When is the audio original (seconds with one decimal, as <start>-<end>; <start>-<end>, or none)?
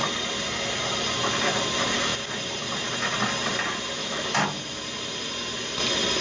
0.0-4.0; 4.6-6.2